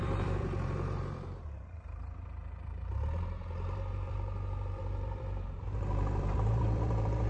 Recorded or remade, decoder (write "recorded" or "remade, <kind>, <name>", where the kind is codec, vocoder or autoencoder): remade, vocoder, BigVGAN v2